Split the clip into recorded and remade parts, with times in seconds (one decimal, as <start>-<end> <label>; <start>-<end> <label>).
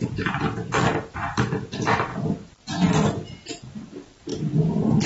0.0-5.1 recorded